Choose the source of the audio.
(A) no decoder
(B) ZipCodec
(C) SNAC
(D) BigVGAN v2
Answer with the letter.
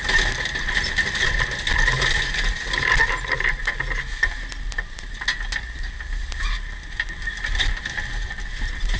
A